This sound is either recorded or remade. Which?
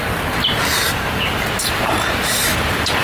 recorded